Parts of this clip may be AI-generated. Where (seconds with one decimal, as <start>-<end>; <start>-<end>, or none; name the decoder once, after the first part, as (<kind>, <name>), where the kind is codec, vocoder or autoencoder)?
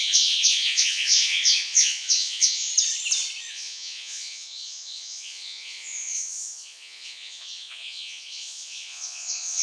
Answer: 0.0-2.7 (vocoder, Vocos); 3.5-9.6